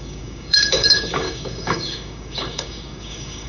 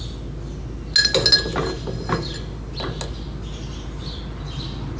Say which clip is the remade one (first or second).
first